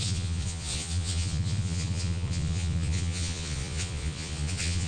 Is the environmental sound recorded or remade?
remade